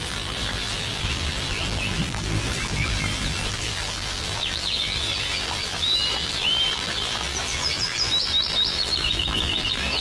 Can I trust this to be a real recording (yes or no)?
no